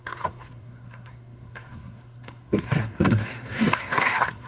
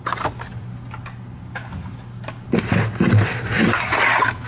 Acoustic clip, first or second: second